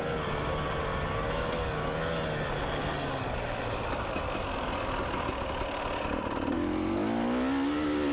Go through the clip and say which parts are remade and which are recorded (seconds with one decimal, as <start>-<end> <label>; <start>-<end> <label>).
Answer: 0.0-8.1 recorded